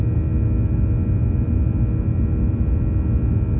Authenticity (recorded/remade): recorded